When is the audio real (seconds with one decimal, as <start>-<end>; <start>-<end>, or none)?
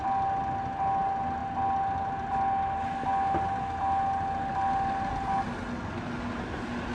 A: 0.0-6.9